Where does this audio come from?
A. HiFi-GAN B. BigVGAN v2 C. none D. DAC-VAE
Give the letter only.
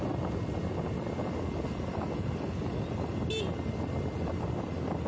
C